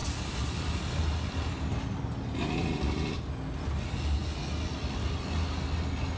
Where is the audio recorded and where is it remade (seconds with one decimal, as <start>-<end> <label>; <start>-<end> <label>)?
0.0-2.0 remade; 2.0-2.6 recorded; 2.6-3.2 remade; 3.2-6.2 recorded